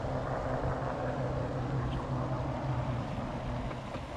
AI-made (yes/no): no